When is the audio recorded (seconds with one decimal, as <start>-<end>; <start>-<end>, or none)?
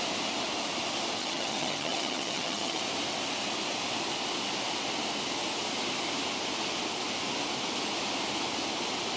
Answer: 0.0-1.2; 2.8-9.2